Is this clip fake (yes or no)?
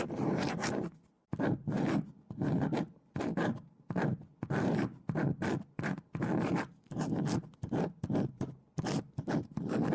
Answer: yes